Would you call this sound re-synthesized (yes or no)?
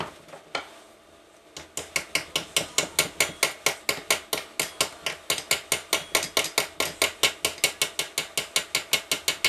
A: no